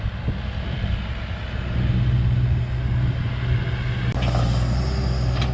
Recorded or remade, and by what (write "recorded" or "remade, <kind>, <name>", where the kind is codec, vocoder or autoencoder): recorded